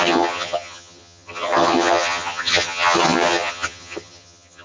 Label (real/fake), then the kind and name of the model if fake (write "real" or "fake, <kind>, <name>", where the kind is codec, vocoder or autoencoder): fake, vocoder, HiFi-GAN